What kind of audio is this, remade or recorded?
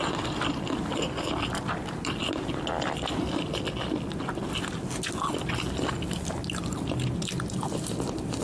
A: recorded